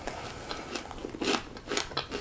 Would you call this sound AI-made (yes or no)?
no